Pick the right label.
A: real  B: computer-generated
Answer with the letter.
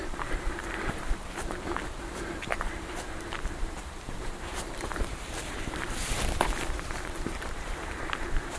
B